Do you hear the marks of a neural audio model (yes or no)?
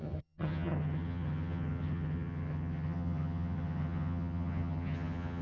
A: yes